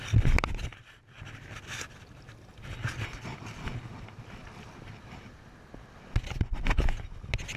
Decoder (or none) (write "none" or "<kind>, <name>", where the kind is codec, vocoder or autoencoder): none